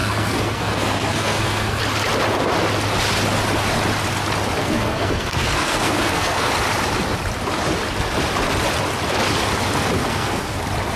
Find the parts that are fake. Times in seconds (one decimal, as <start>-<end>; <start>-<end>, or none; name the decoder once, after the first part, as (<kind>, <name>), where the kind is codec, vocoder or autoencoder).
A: 0.0-1.8 (codec, SNAC); 4.6-6.5; 10.0-10.6